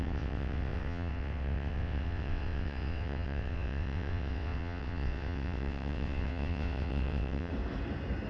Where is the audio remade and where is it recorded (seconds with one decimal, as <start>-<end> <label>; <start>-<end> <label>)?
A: 0.0-7.5 remade; 7.5-8.3 recorded